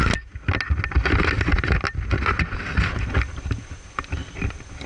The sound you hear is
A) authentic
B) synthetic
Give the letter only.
A